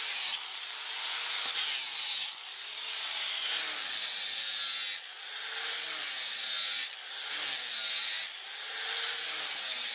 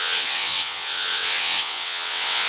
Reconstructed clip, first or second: second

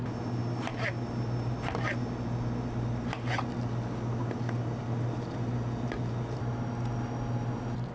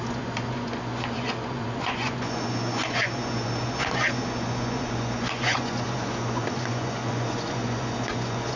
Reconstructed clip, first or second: second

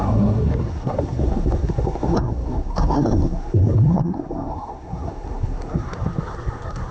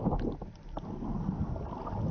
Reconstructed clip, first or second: first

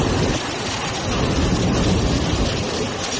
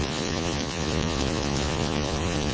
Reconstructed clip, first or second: second